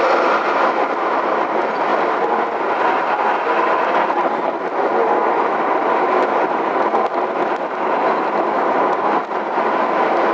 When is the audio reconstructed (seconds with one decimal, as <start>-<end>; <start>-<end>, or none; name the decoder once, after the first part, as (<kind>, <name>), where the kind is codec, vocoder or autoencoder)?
none